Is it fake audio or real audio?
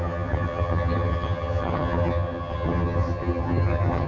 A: fake